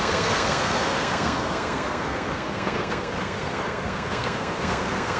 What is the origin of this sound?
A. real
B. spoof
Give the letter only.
B